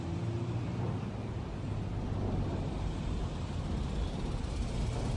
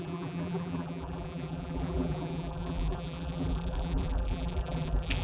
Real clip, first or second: first